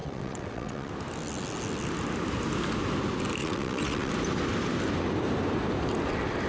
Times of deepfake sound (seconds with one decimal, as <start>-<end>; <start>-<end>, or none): 0.0-0.9; 3.4-4.1